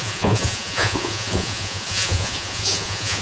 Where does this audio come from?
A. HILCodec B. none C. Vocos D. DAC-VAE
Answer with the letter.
C